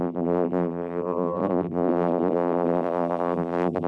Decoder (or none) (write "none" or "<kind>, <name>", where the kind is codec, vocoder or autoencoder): vocoder, BigVGAN v2